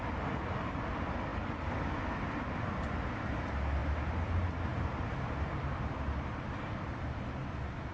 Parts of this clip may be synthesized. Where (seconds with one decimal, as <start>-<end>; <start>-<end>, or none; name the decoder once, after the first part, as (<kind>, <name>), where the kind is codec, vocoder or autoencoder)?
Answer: none